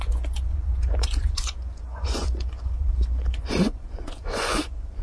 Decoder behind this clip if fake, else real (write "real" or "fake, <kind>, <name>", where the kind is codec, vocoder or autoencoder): fake, vocoder, Vocos